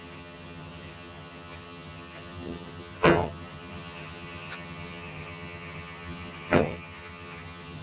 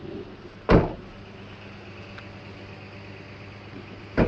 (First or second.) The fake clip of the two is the first